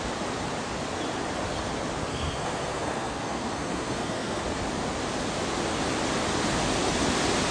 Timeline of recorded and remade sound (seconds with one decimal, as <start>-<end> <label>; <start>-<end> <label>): 0.0-2.1 recorded; 2.1-4.4 remade; 4.4-7.5 recorded